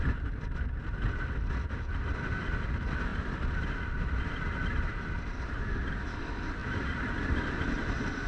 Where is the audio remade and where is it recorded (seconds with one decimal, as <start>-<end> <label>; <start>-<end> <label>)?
0.0-8.3 recorded